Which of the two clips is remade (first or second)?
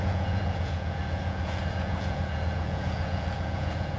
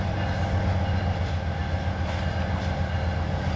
first